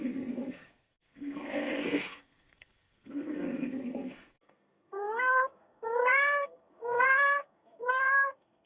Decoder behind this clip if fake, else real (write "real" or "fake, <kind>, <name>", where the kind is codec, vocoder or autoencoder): fake, codec, SNAC